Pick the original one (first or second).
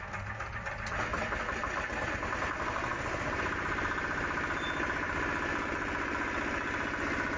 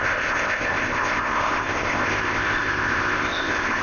first